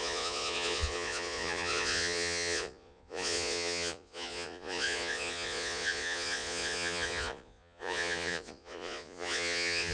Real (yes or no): no